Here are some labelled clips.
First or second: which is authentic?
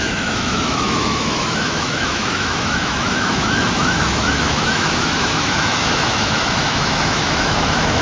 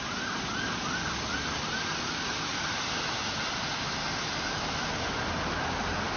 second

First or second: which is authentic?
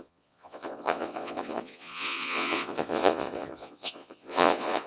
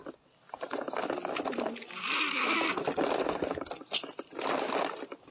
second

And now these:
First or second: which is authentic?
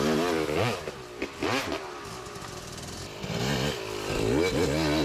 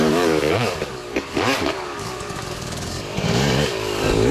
first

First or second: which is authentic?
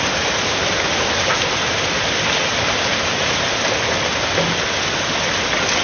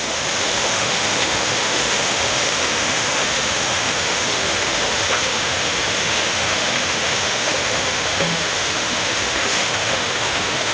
first